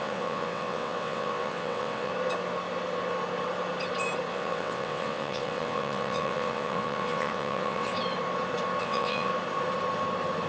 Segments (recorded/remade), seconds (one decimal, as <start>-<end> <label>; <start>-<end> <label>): 0.0-2.1 remade; 2.1-4.3 recorded; 4.3-7.9 remade; 7.9-8.8 recorded; 8.8-9.3 remade; 9.3-10.5 recorded